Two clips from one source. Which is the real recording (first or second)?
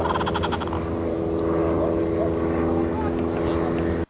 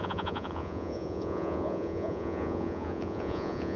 first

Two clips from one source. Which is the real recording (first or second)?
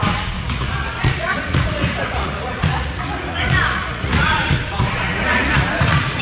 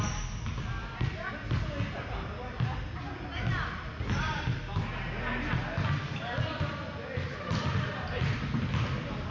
second